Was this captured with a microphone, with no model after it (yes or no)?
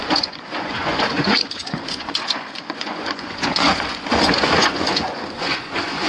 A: no